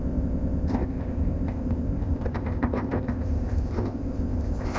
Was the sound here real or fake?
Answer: fake